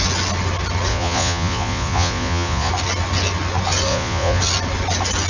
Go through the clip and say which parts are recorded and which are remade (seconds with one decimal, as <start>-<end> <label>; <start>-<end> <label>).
0.0-0.9 recorded; 0.9-2.7 remade; 2.7-3.9 recorded; 3.9-4.4 remade; 4.4-5.3 recorded